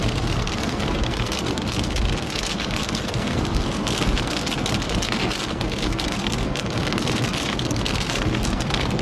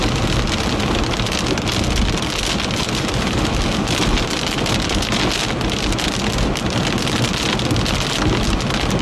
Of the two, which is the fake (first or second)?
first